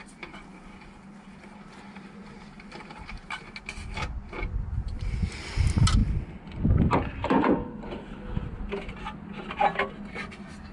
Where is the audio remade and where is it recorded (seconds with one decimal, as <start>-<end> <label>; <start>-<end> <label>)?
0.0-10.7 recorded